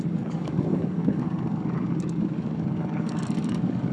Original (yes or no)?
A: no